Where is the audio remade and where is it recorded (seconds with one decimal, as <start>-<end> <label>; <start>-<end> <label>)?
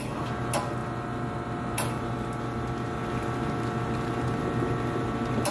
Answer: 0.0-5.5 recorded